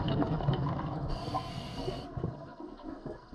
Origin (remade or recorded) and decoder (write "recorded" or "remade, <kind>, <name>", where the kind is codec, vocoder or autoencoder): remade, codec, SNAC